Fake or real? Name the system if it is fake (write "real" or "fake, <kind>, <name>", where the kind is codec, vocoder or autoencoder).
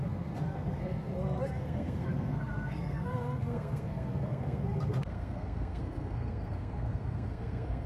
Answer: fake, codec, SNAC